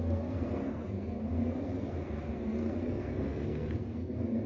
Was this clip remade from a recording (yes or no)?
yes